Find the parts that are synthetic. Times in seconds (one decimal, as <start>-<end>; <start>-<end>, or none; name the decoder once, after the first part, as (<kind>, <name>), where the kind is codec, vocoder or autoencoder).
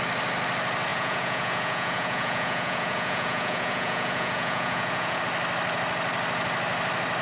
0.9-5.2 (vocoder, Vocos)